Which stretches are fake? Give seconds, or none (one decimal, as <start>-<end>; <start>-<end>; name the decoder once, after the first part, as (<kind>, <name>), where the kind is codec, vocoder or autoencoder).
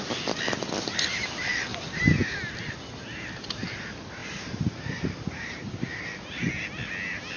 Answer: 4.2-5.9 (vocoder, BigVGAN v2)